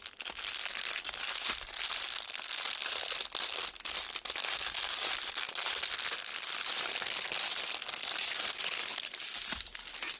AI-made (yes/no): no